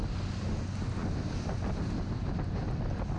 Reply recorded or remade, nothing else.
recorded